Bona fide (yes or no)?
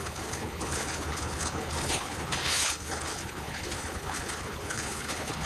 no